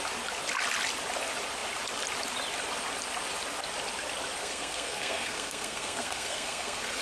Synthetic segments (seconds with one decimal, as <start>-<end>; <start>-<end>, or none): 4.4-7.0